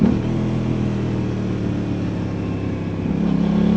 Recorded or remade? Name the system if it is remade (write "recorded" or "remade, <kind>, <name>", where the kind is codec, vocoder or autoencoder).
recorded